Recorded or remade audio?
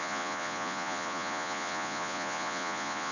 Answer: remade